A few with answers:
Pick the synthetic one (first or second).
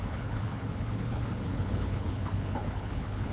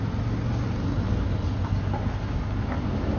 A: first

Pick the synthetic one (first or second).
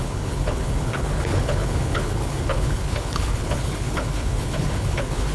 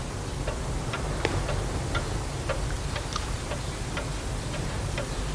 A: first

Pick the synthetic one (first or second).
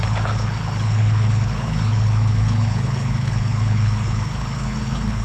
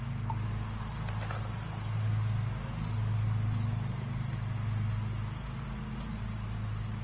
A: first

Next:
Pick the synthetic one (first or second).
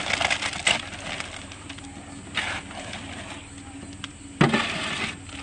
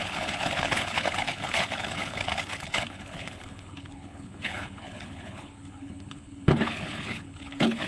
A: second